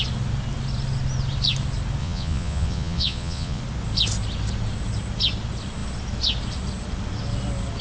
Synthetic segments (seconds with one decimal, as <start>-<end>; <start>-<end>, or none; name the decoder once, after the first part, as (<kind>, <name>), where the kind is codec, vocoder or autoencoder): 2.0-3.6 (vocoder, Vocos)